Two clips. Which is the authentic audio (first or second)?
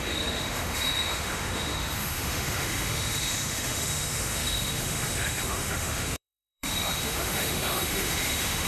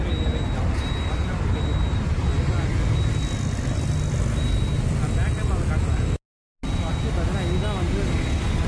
second